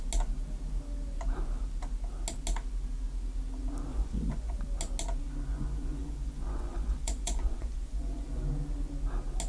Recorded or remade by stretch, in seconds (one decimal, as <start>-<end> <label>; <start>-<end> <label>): 0.0-3.9 recorded; 3.9-4.6 remade; 4.6-5.5 recorded; 5.5-8.4 remade; 8.4-9.5 recorded